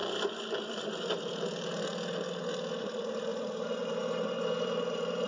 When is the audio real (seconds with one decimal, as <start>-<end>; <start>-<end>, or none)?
none